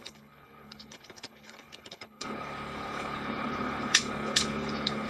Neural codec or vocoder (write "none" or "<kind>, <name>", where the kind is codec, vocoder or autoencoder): codec, HILCodec